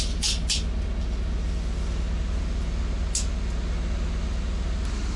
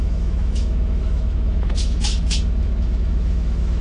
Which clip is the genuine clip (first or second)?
first